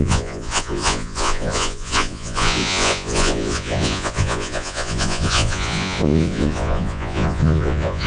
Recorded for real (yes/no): no